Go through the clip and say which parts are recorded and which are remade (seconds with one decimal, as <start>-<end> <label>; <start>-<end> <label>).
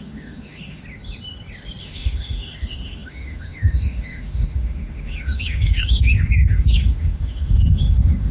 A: 0.0-0.8 remade; 0.8-1.8 recorded; 1.8-8.3 remade